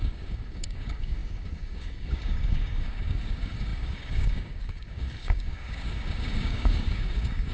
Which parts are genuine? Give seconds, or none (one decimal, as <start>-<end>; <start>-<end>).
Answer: none